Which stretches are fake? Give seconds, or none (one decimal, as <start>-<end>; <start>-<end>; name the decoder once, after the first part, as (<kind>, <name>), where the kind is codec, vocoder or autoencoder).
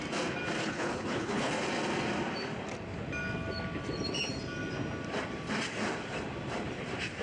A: 0.6-1.5 (codec, HILCodec)